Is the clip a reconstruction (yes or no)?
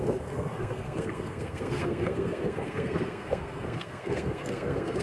yes